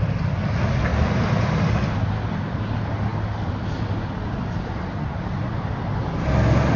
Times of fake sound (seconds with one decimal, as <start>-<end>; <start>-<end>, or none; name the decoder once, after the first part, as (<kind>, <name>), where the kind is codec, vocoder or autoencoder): none